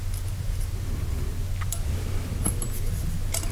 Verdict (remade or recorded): recorded